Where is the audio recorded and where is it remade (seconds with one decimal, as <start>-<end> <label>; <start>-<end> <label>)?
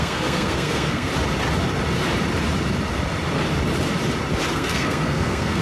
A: 0.0-1.1 remade; 1.1-4.5 recorded; 4.5-5.6 remade